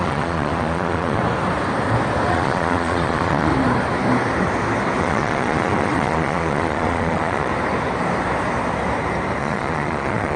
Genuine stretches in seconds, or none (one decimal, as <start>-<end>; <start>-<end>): 1.2-2.3; 3.5-5.0; 7.5-9.4